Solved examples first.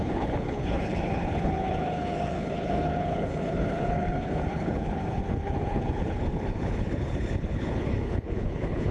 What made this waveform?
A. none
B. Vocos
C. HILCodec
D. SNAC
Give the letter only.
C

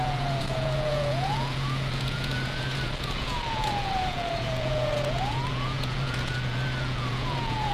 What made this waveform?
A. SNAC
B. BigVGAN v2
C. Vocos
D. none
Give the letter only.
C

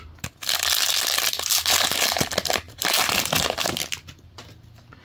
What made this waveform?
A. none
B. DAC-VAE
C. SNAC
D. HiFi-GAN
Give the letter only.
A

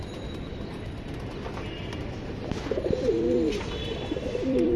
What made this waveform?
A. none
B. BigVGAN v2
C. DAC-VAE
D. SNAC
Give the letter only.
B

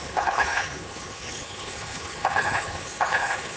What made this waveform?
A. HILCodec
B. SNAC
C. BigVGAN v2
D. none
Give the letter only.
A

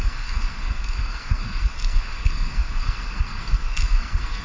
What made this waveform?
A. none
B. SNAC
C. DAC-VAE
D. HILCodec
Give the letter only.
B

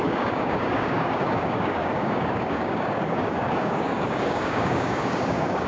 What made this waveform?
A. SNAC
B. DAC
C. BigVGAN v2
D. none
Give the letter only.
B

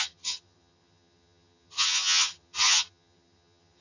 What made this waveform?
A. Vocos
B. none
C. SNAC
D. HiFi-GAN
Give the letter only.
D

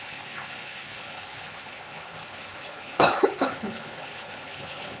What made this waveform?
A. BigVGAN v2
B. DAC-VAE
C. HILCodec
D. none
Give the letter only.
C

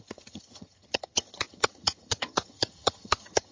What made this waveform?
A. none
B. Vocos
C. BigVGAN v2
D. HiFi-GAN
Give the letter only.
D